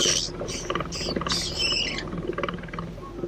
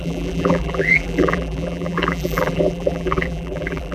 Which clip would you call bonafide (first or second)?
first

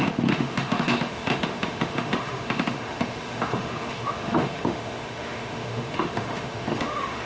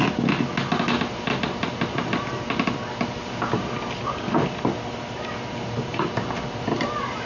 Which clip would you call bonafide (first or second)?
second